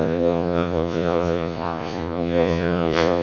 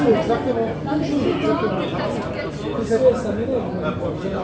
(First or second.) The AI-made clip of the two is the first